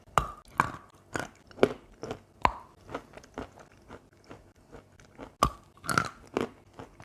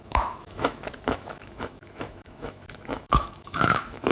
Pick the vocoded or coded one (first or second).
second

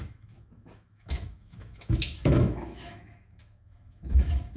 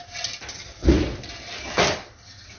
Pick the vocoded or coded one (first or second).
first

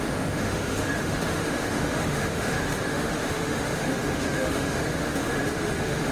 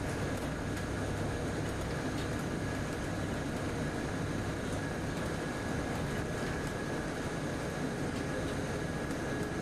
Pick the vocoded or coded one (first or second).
first